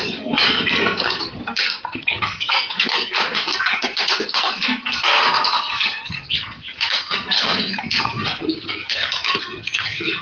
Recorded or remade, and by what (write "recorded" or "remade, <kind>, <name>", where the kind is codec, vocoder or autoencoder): remade, codec, SNAC